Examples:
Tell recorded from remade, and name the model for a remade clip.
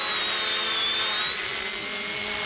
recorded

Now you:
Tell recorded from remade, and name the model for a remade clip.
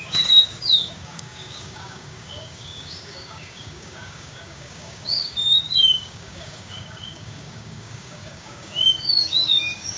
remade, codec, DAC